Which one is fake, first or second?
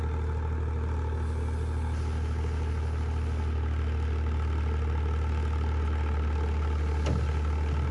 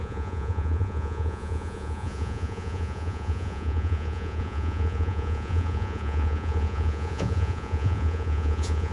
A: second